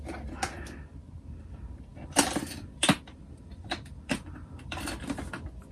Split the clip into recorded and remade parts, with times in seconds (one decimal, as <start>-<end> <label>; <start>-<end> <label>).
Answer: 0.0-1.9 recorded; 1.9-5.3 remade; 5.3-5.7 recorded